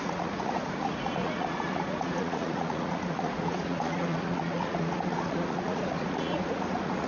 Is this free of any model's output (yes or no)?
no